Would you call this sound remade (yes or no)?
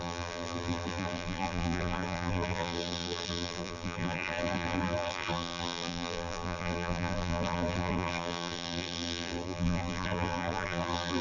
yes